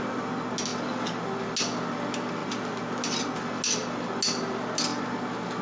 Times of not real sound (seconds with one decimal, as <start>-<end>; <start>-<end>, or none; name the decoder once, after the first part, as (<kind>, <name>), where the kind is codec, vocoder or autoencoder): none